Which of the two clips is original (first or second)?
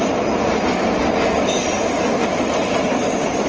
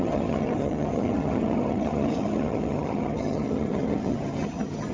first